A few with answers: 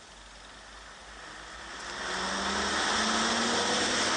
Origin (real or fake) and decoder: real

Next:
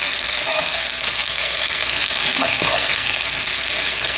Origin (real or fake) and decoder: fake, codec, SNAC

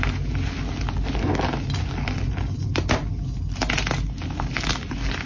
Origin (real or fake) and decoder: real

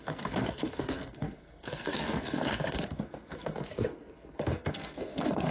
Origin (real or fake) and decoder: fake, codec, SNAC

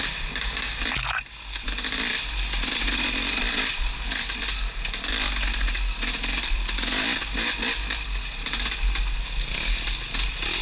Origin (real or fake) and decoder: real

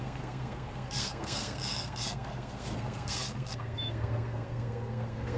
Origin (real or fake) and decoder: fake, codec, SNAC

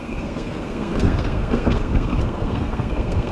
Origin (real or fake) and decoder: fake, codec, SNAC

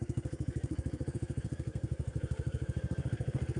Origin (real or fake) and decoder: fake, codec, SNAC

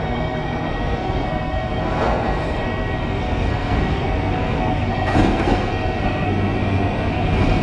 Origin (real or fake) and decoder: fake, codec, SNAC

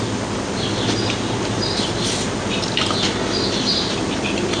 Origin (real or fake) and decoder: real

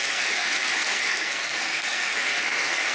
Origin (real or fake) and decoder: fake, codec, SNAC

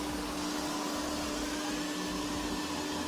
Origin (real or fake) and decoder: real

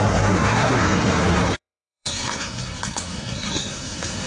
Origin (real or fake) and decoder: fake, codec, SNAC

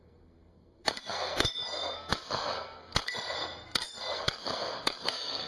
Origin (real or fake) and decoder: fake, codec, SNAC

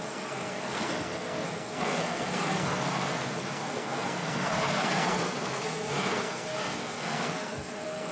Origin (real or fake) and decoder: fake, codec, SNAC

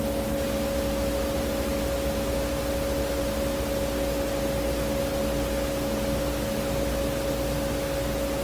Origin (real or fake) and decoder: real